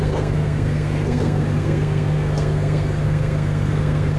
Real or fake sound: fake